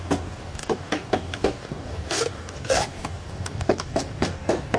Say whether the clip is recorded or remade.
remade